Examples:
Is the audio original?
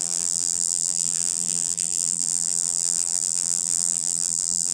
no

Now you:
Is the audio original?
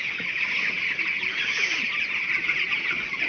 yes